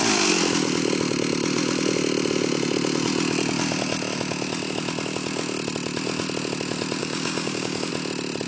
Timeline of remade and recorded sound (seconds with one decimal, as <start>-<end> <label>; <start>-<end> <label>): 0.0-7.0 recorded; 7.0-7.9 remade; 7.9-8.5 recorded